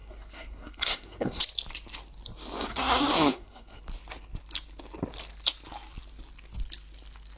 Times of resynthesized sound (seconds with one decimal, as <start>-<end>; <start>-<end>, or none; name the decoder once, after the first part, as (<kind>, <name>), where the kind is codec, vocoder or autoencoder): 0.0-1.4 (codec, SNAC); 2.7-3.8